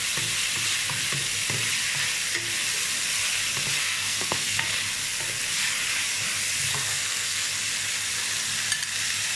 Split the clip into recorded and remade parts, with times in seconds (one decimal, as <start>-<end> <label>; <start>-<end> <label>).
0.0-3.8 recorded; 3.8-4.6 remade; 4.6-6.7 recorded; 6.7-7.5 remade; 7.5-9.4 recorded